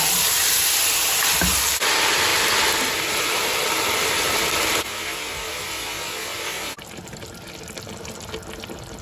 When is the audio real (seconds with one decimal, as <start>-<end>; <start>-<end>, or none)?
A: 0.0-9.0